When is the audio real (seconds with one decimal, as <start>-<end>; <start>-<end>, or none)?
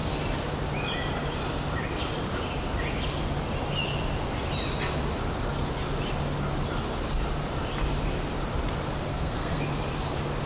0.0-9.1; 9.6-10.5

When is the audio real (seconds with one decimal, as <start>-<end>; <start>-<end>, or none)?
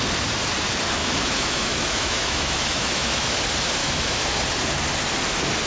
0.0-1.0; 3.4-3.8; 4.3-5.7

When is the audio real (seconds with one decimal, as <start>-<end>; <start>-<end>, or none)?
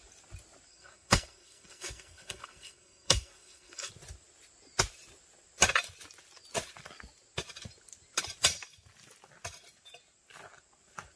0.0-0.7; 3.9-11.2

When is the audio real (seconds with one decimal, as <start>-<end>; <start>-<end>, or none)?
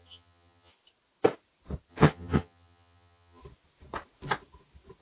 0.7-1.9; 3.4-5.0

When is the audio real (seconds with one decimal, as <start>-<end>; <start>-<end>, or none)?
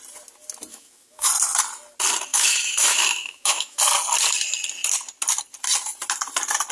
0.0-0.7; 1.3-2.3; 3.8-6.7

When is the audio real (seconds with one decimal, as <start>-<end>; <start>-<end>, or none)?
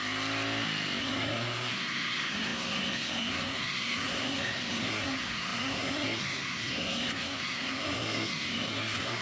0.0-1.0